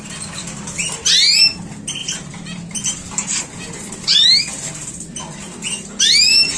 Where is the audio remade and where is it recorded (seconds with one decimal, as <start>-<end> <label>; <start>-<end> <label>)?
0.0-2.0 recorded; 2.0-3.4 remade; 3.4-6.6 recorded